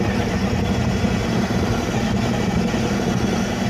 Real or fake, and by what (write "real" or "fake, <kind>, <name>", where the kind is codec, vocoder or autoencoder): fake, vocoder, BigVGAN v2